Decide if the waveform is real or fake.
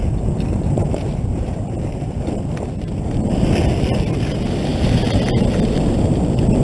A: real